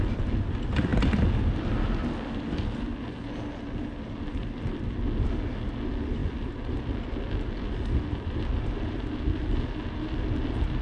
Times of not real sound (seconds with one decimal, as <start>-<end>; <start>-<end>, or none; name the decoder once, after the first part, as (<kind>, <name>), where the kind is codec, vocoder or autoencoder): none